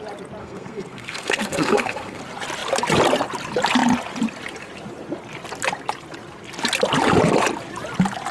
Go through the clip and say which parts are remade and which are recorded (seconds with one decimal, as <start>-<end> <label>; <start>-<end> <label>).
0.0-0.4 recorded; 0.4-2.2 remade; 2.2-8.3 recorded